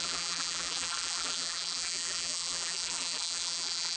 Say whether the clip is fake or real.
fake